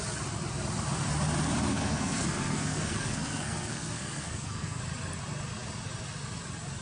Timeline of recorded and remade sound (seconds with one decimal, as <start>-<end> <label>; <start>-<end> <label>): 0.0-1.7 recorded; 1.7-4.8 remade; 4.8-6.8 recorded